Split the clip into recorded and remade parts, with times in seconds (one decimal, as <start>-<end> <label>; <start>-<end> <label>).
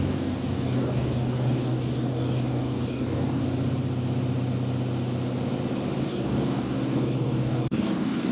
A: 0.0-3.4 remade; 3.4-6.0 recorded; 6.0-8.3 remade